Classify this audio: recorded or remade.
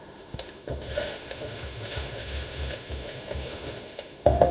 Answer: remade